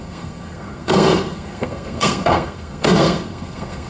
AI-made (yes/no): yes